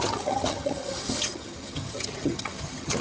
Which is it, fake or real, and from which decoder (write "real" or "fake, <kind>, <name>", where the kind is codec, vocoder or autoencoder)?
fake, vocoder, HiFi-GAN